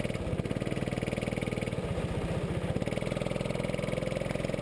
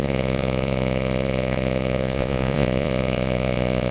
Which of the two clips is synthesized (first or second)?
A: second